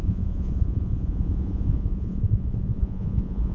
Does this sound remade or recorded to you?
remade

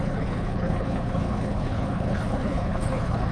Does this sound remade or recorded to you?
remade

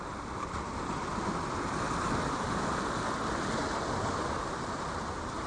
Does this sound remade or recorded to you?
recorded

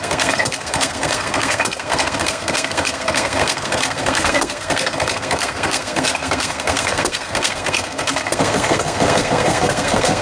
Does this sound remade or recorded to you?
remade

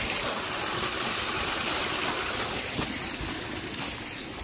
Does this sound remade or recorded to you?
recorded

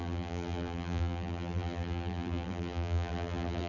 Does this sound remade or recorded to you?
remade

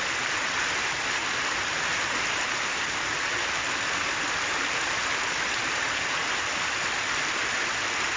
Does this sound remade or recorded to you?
recorded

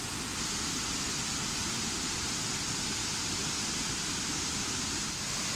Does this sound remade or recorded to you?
recorded